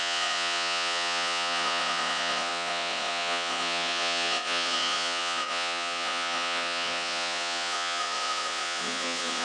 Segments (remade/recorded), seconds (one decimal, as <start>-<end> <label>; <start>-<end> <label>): 0.0-9.4 remade